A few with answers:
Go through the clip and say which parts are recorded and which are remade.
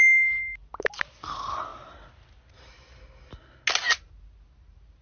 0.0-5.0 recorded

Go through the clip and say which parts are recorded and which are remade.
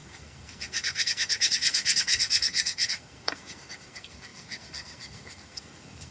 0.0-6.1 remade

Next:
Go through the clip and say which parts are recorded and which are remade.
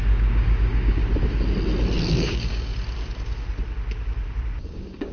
0.0-1.0 remade; 1.0-2.1 recorded; 2.1-2.7 remade; 2.7-4.6 recorded; 4.6-5.1 remade